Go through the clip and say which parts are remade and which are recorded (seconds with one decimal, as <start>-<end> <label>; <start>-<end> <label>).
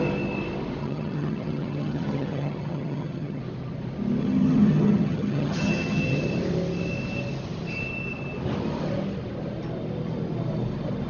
0.0-0.8 recorded; 0.8-3.4 remade; 3.4-4.2 recorded; 4.2-6.2 remade; 6.2-11.1 recorded